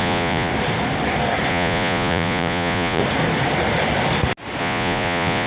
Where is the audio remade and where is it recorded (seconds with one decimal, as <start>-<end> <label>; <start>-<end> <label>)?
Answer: 0.0-0.5 remade; 0.5-1.5 recorded; 1.5-3.0 remade; 3.0-4.6 recorded; 4.6-5.5 remade